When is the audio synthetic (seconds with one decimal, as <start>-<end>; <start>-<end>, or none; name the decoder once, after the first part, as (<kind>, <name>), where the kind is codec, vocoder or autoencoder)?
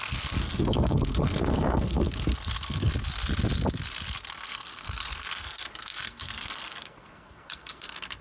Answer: 0.0-2.9 (codec, SNAC); 4.3-8.2